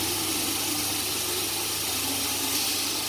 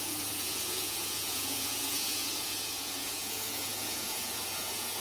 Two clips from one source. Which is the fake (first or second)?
second